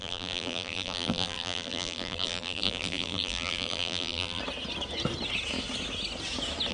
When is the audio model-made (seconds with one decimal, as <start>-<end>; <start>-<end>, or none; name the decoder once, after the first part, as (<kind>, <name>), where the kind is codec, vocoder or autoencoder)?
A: 0.0-4.4 (vocoder, BigVGAN v2)